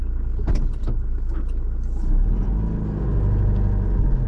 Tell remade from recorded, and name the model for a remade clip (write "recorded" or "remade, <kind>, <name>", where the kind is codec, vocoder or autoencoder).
recorded